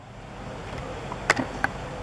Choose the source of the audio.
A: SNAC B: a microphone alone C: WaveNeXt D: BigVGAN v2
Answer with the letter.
B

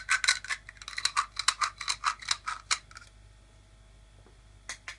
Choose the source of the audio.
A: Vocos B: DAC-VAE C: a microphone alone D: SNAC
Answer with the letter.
C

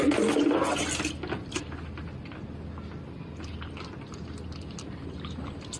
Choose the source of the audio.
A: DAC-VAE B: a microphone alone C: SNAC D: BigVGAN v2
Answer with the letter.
B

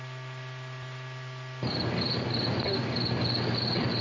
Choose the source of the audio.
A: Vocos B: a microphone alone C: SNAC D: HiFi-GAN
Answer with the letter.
B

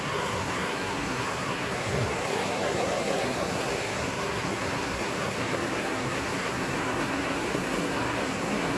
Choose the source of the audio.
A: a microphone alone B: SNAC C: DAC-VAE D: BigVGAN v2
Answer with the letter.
B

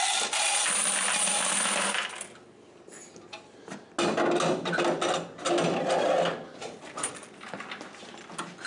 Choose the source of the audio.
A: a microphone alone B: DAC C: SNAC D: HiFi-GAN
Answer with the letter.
A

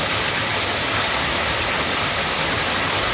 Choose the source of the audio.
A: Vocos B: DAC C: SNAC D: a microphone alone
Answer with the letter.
D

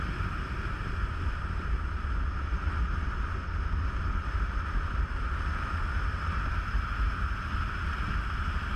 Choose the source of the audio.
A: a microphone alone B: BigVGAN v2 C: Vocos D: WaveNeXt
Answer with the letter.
A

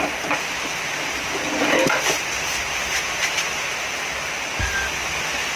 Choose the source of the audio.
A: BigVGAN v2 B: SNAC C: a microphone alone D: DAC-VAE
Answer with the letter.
C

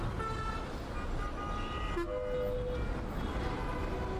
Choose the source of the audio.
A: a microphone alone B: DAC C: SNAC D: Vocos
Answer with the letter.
A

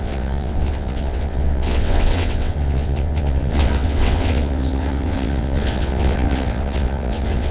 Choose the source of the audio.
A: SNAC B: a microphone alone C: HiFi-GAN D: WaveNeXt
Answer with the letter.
D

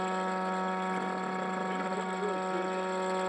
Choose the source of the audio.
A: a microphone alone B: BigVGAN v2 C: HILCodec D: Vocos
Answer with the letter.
A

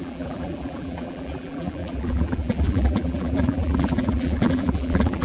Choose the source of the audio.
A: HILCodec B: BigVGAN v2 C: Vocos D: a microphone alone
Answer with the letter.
B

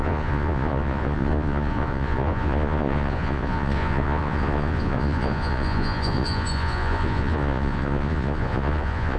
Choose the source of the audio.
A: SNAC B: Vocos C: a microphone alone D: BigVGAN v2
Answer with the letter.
B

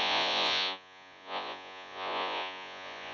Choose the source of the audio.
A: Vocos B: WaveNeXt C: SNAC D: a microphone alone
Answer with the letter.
A